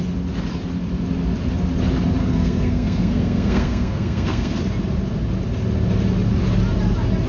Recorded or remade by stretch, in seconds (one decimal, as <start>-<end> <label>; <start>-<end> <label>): 0.0-2.2 recorded; 2.2-4.6 remade; 4.6-7.3 recorded